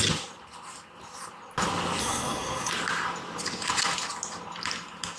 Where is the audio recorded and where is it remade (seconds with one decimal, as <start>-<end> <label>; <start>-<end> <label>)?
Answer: 0.0-2.0 recorded; 2.0-2.7 remade; 2.7-5.2 recorded